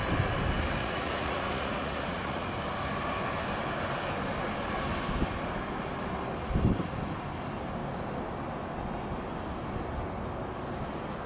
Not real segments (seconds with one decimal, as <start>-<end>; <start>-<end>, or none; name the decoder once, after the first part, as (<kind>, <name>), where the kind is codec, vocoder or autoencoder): 0.8-2.5 (vocoder, Vocos)